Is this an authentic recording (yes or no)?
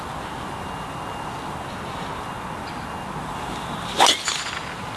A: yes